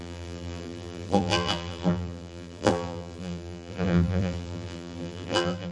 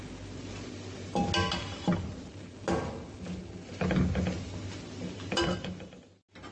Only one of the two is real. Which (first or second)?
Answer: second